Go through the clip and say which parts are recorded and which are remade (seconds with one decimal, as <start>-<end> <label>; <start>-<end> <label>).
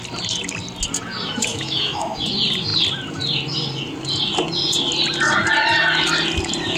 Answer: 0.0-1.5 recorded; 1.5-2.2 remade; 2.2-6.8 recorded